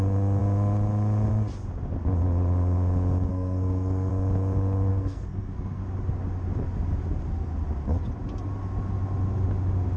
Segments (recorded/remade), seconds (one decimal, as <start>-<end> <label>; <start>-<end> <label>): 0.0-3.3 recorded; 3.3-4.1 remade; 4.1-4.9 recorded; 4.9-5.8 remade; 5.8-10.0 recorded

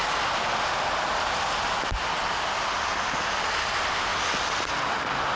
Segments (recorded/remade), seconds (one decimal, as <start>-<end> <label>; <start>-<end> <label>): 0.0-5.4 recorded